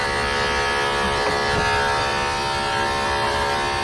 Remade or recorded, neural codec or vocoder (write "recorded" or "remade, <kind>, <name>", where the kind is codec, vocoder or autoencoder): recorded